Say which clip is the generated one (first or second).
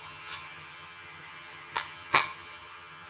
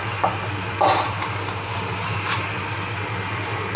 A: first